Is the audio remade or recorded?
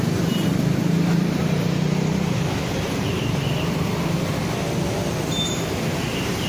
remade